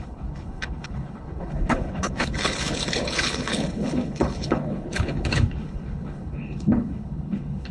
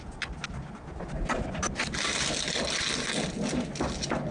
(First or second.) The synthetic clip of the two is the first